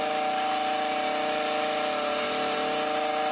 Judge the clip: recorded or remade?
recorded